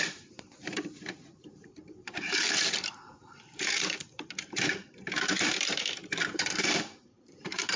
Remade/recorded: remade